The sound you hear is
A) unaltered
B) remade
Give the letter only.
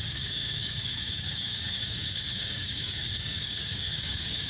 B